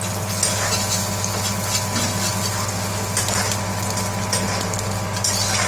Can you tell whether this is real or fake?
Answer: real